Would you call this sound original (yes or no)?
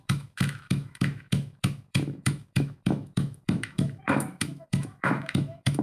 no